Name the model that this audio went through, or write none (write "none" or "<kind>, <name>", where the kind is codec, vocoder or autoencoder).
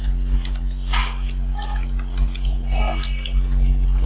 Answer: none